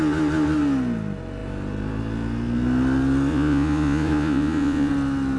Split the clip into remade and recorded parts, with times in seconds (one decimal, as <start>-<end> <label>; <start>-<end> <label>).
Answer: 0.0-3.3 recorded; 3.3-4.9 remade; 4.9-5.4 recorded